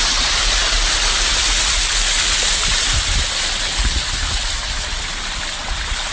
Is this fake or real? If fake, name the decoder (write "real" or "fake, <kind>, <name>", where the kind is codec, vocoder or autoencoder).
fake, vocoder, BigVGAN v2